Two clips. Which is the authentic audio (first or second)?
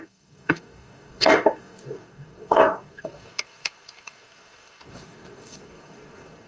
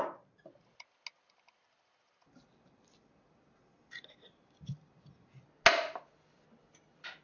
second